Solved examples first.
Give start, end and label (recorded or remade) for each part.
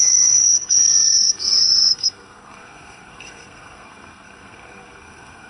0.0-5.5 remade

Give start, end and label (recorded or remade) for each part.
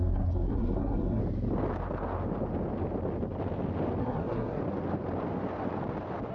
0.0-1.2 remade; 1.2-4.0 recorded; 4.0-4.6 remade; 4.6-6.3 recorded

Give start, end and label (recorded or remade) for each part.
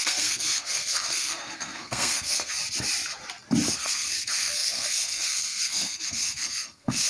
0.0-2.6 remade; 2.6-3.7 recorded; 3.7-7.1 remade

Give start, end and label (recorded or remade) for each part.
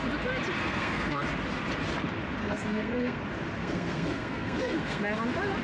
0.0-0.6 recorded; 0.6-1.2 remade; 1.2-2.4 recorded; 2.4-3.2 remade; 3.2-3.6 recorded; 3.6-5.0 remade; 5.0-5.6 recorded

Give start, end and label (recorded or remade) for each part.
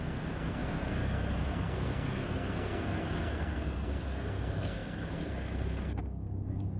0.0-6.8 remade